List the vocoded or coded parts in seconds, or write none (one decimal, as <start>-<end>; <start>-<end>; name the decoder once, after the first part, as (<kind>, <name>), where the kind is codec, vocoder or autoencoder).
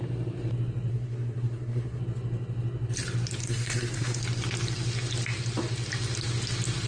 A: 0.9-2.0 (codec, SNAC); 3.4-4.2